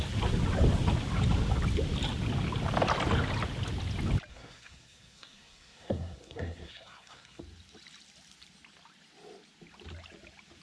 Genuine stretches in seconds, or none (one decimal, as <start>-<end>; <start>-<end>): 0.0-4.3; 7.4-10.6

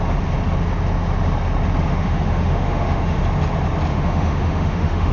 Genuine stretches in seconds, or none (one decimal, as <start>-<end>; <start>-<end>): 0.0-1.9; 3.2-3.9

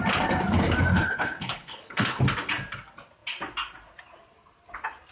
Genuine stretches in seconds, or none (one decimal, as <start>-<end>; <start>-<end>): 0.0-0.9; 2.2-5.1

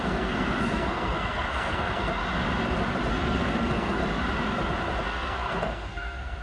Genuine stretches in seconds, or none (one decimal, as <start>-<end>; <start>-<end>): 2.2-3.1; 4.0-5.0

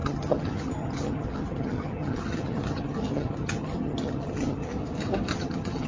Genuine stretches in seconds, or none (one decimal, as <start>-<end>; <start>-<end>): 4.7-5.3

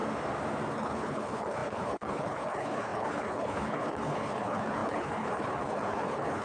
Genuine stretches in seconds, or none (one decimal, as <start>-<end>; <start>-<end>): 0.0-0.7

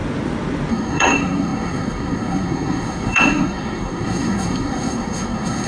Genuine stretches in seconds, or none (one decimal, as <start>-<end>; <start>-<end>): 0.0-0.7

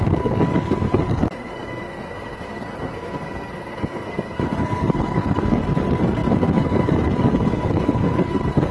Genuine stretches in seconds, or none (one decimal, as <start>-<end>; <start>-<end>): none